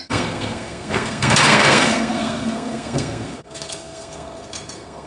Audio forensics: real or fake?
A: fake